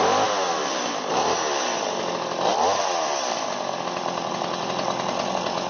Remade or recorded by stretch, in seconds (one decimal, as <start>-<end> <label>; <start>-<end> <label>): 0.0-5.7 recorded